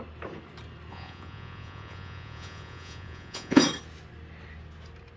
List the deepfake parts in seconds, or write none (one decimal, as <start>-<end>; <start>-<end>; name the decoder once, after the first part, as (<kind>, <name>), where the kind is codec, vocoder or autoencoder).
0.9-3.6 (vocoder, Vocos)